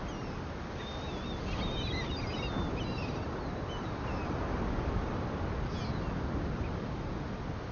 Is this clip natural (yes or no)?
yes